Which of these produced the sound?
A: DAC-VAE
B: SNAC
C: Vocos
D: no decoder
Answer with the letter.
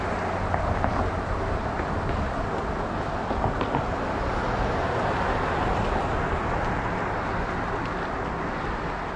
D